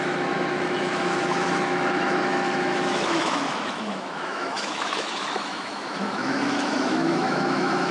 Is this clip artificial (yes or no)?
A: yes